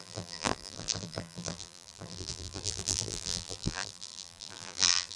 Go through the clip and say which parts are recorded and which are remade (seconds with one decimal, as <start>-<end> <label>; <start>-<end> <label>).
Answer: 0.0-5.2 remade